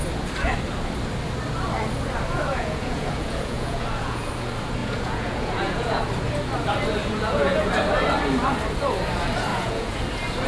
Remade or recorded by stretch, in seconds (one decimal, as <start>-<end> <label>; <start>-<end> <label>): 0.0-2.5 recorded; 2.5-4.3 remade; 4.3-4.8 recorded; 4.8-6.0 remade; 6.0-7.0 recorded; 7.0-7.7 remade; 7.7-9.5 recorded; 9.5-10.0 remade; 10.0-10.5 recorded